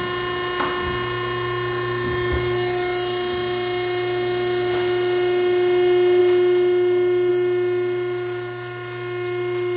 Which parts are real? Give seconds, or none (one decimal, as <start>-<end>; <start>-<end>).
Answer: 0.0-9.8